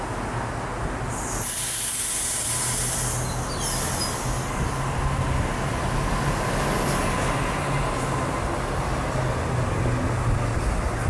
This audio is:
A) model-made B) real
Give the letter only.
B